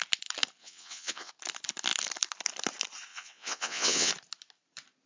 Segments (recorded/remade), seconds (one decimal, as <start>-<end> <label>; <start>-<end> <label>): 0.0-0.6 recorded; 0.6-1.3 remade; 1.3-3.1 recorded; 3.1-4.1 remade; 4.1-5.1 recorded